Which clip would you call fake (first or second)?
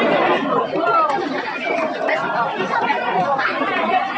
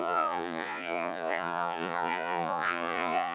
second